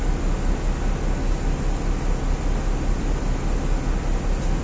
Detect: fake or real real